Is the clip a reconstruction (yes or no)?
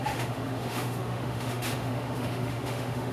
yes